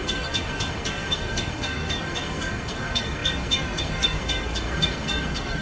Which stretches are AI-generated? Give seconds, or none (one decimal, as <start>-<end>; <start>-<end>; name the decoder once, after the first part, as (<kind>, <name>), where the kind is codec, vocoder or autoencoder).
0.0-5.6 (codec, SNAC)

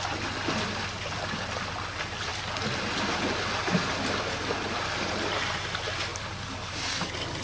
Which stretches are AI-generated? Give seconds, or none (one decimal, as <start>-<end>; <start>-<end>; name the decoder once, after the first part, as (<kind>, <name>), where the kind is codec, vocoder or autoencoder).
none

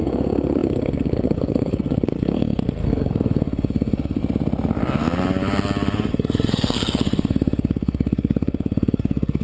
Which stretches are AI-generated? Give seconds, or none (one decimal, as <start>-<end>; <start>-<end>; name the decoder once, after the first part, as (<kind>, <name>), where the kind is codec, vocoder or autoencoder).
0.0-4.2 (codec, SNAC); 6.1-9.4

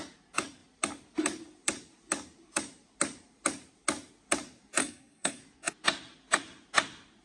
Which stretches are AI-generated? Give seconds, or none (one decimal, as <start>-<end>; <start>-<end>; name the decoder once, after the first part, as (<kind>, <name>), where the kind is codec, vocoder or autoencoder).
4.8-5.4 (codec, SNAC)

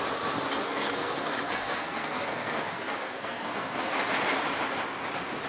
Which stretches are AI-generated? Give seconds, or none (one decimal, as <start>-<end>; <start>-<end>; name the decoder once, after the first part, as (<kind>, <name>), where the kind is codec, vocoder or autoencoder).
0.6-3.9 (codec, SNAC)

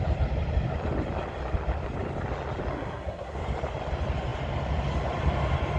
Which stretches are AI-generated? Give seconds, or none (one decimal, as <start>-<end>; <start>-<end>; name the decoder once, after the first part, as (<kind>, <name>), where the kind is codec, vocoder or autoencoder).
2.7-3.4 (codec, SNAC)

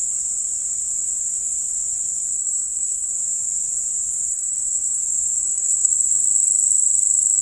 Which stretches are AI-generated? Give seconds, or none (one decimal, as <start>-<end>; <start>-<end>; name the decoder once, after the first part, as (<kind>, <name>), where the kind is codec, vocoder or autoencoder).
2.3-3.1 (codec, SNAC); 4.3-5.0; 5.4-5.9

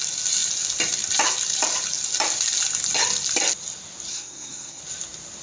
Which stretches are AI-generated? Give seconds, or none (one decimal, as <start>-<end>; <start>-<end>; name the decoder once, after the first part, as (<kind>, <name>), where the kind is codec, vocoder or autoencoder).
4.1-4.8 (codec, SNAC)